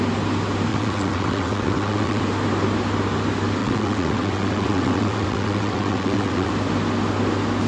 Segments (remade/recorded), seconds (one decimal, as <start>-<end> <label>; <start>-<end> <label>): 0.0-0.7 recorded; 0.7-2.2 remade; 2.2-3.6 recorded; 3.6-6.5 remade; 6.5-7.7 recorded

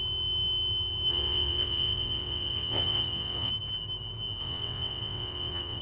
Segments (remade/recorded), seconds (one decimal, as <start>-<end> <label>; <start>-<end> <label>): 0.0-1.1 recorded; 1.1-3.5 remade; 3.5-4.4 recorded; 4.4-5.8 remade